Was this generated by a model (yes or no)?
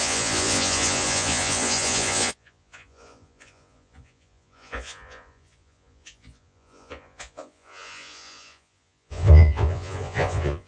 yes